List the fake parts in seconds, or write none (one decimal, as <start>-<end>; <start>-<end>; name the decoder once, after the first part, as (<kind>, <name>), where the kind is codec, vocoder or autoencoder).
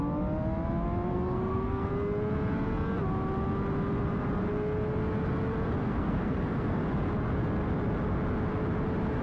1.1-1.9 (codec, SNAC); 5.8-6.8